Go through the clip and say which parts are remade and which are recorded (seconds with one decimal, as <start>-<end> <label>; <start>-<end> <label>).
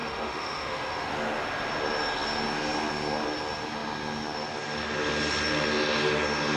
0.0-1.1 remade; 1.1-6.6 recorded